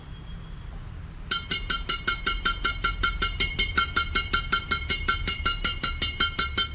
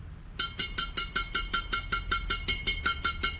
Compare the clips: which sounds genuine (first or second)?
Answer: second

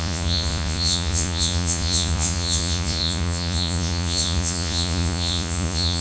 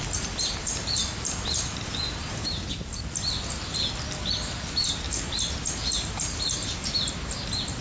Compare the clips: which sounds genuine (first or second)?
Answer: second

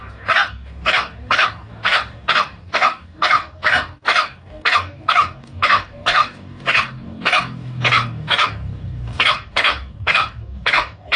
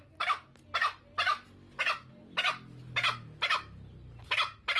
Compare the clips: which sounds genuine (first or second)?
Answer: second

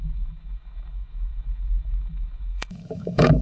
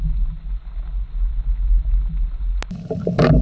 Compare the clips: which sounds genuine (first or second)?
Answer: second